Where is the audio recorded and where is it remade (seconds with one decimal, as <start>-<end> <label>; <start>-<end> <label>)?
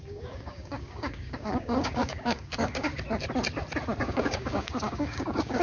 0.0-2.9 remade; 2.9-4.0 recorded; 4.0-5.6 remade